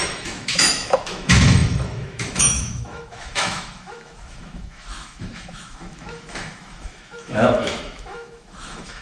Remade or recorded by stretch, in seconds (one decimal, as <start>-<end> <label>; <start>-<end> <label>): 0.0-9.0 remade